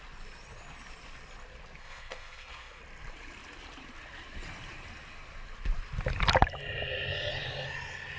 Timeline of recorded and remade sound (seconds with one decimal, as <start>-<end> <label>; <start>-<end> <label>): 0.0-1.8 recorded; 1.8-2.8 remade; 2.8-8.2 recorded